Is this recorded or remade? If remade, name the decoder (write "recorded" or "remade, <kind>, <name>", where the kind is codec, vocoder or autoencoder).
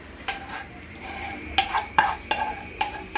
remade, vocoder, BigVGAN v2